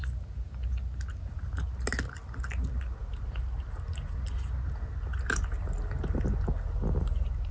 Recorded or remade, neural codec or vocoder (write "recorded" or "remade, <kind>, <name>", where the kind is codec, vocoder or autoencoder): recorded